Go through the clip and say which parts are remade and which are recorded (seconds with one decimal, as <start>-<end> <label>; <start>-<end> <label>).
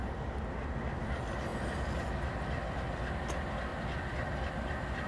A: 0.0-1.5 recorded; 1.5-2.8 remade; 2.8-3.7 recorded; 3.7-4.5 remade; 4.5-5.1 recorded